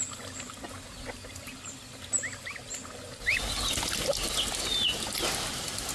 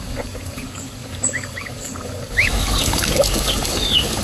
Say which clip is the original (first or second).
first